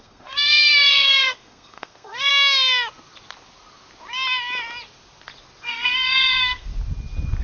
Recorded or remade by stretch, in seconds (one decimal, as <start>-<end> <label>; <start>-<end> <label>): 0.0-2.3 remade; 2.3-5.6 recorded; 5.6-6.7 remade; 6.7-7.4 recorded